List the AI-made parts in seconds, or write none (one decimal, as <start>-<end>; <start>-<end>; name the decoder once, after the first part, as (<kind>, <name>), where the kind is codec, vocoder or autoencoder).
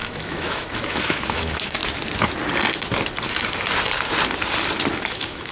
0.0-1.8 (autoencoder, DAC-VAE); 4.9-5.5